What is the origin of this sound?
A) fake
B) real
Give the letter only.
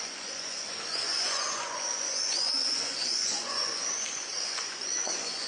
A